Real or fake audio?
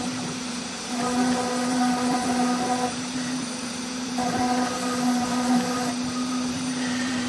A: fake